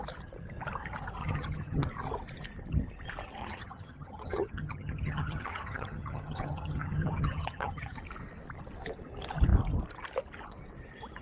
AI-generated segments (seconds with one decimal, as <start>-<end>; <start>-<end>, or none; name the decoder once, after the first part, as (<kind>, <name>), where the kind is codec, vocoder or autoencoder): 1.2-1.9 (vocoder, HiFi-GAN); 3.4-8.0